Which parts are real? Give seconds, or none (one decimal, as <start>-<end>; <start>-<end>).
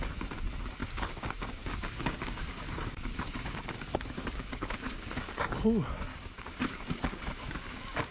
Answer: 0.0-0.8; 5.6-6.1